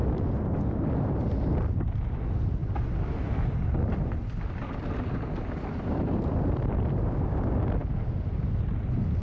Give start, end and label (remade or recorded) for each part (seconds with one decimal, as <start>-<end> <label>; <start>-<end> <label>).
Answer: 0.0-2.6 recorded; 2.6-6.4 remade; 6.4-9.2 recorded